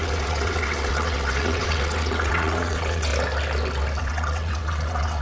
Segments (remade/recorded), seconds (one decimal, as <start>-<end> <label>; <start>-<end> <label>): 0.0-3.1 remade; 3.1-4.0 recorded; 4.0-5.2 remade